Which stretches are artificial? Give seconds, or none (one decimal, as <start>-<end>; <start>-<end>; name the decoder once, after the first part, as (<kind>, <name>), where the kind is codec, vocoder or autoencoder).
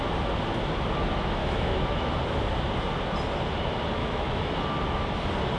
1.4-2.1 (autoencoder, DAC-VAE); 4.0-4.5